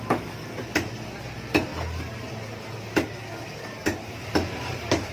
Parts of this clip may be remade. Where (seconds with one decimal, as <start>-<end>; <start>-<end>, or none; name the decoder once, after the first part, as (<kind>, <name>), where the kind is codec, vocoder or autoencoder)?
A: 3.8-5.1 (vocoder, BigVGAN v2)